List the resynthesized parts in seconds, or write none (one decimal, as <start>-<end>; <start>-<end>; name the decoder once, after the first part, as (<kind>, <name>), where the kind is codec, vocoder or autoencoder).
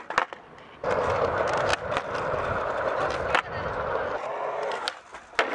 none